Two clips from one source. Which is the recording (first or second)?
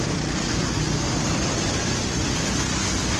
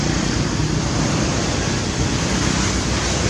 first